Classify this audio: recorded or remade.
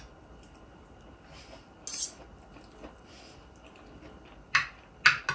recorded